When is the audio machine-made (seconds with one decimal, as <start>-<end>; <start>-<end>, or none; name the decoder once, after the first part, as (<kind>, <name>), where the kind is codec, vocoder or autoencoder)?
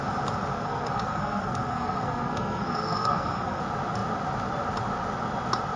0.5-3.6 (codec, SNAC)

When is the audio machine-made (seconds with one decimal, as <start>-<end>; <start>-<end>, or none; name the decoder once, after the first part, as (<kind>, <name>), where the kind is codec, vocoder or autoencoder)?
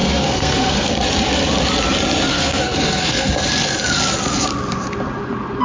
0.0-0.9 (codec, SNAC); 2.3-3.3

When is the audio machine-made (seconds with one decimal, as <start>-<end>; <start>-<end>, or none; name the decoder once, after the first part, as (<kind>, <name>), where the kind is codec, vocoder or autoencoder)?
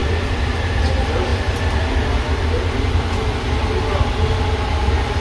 none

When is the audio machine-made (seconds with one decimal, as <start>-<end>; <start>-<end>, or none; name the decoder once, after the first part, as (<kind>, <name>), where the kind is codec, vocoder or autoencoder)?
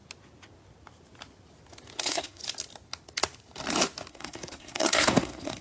2.0-2.4 (codec, SNAC); 4.1-5.6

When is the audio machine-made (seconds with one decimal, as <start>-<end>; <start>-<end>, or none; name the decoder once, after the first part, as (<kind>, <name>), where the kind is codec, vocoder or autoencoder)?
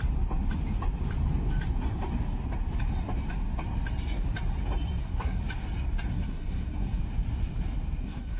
5.0-5.4 (codec, SNAC); 6.1-7.0; 8.0-8.4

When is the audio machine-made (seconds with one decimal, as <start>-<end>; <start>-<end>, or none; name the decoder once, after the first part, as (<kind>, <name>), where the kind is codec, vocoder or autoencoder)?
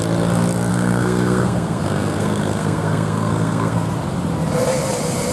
0.7-3.9 (codec, SNAC)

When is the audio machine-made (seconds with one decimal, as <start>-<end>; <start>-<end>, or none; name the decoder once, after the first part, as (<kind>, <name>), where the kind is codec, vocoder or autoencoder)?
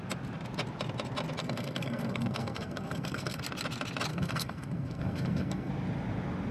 1.4-3.4 (codec, SNAC); 4.1-5.7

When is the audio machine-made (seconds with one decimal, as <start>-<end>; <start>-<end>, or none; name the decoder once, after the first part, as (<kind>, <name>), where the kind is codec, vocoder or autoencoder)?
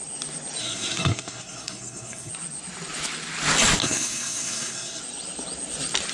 0.6-2.3 (codec, SNAC); 3.8-5.0